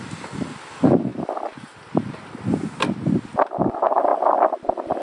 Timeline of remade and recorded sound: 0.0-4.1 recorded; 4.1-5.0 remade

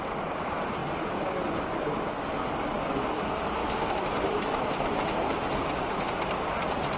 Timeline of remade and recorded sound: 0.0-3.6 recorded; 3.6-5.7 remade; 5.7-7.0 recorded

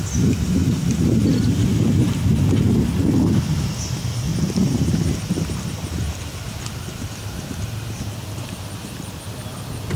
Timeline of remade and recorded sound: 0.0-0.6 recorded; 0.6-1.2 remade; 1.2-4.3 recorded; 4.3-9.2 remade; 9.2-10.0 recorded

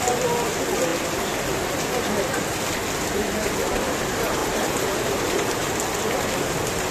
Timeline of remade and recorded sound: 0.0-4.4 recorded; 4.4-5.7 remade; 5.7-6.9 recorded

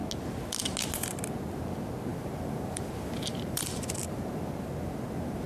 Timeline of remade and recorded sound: 0.0-2.1 recorded; 2.1-4.2 remade; 4.2-5.5 recorded